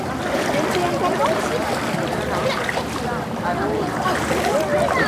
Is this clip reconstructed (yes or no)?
no